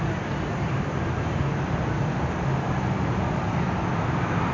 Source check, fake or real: real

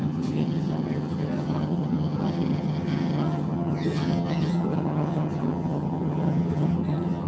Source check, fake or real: fake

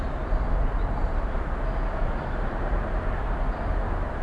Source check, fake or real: real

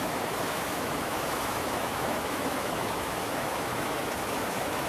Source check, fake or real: fake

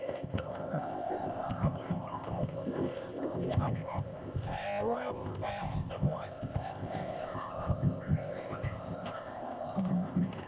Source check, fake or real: fake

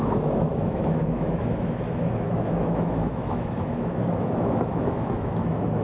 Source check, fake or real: fake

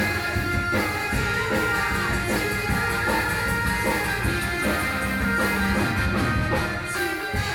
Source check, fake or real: real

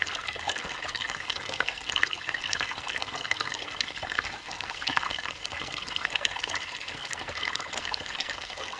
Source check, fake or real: fake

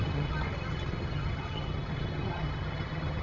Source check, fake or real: fake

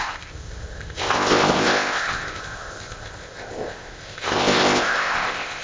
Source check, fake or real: fake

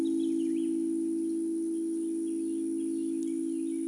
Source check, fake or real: real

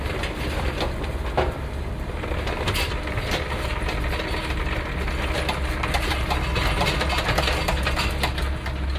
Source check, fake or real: real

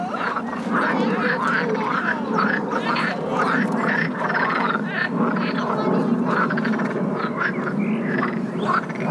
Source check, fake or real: real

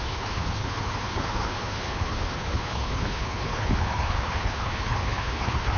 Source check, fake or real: fake